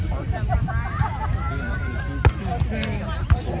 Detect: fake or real real